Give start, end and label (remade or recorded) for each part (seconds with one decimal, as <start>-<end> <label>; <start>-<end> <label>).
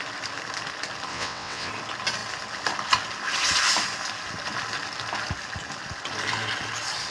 0.0-1.1 recorded; 1.1-1.7 remade; 1.7-7.1 recorded